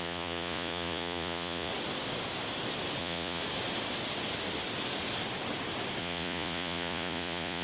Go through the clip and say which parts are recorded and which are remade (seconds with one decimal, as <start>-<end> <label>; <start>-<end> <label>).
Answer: 0.0-1.7 remade; 1.7-3.0 recorded; 3.0-3.4 remade; 3.4-6.0 recorded; 6.0-7.6 remade